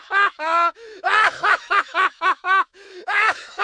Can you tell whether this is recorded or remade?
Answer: remade